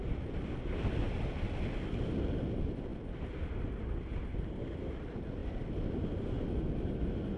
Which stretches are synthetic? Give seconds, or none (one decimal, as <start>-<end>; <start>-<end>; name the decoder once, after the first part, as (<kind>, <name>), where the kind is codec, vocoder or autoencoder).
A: none